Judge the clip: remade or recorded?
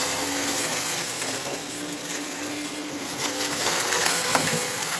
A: remade